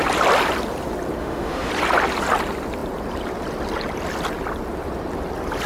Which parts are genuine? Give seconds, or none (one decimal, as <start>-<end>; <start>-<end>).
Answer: 0.0-1.2; 1.7-5.7